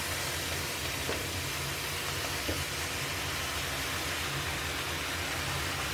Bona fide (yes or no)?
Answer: yes